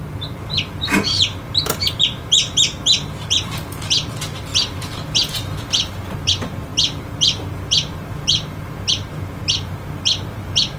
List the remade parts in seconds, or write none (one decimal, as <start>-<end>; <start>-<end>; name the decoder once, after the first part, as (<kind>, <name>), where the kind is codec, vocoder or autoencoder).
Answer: none